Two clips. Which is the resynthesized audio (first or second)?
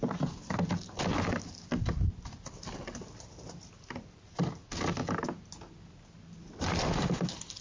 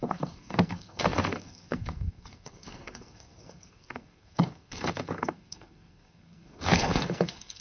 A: second